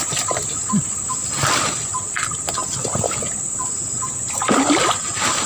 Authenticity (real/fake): real